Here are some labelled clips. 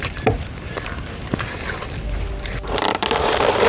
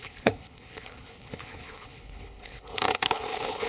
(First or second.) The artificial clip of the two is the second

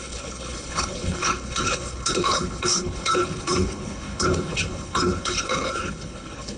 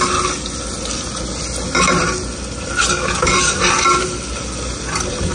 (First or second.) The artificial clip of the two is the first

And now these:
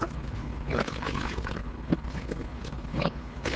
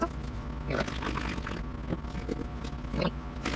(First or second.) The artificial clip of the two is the first